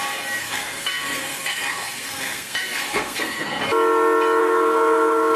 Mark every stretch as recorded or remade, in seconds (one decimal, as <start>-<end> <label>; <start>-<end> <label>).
0.0-0.4 recorded; 0.4-3.6 remade; 3.6-4.4 recorded; 4.4-5.4 remade